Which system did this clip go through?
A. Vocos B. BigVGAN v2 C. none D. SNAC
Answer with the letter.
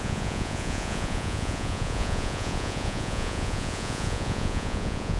A